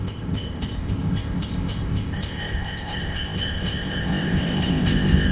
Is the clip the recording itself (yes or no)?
no